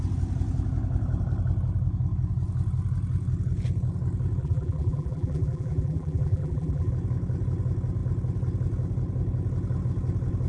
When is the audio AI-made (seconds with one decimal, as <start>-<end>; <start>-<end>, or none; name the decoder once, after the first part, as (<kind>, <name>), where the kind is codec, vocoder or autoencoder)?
4.4-6.9 (vocoder, BigVGAN v2)